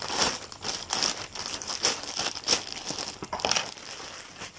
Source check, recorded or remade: recorded